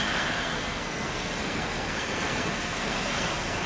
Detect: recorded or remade remade